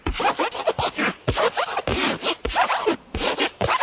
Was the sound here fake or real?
fake